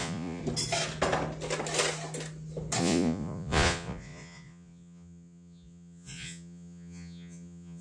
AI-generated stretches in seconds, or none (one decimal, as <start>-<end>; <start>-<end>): 0.0-0.4; 2.8-7.8